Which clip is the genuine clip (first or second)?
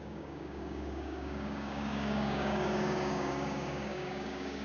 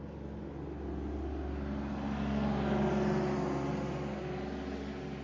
second